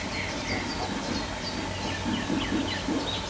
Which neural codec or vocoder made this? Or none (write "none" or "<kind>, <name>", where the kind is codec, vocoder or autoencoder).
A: none